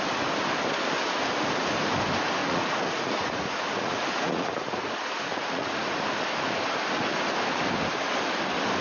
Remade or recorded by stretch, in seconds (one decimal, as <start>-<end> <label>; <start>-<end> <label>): 0.0-2.4 recorded; 2.4-6.0 remade; 6.0-8.8 recorded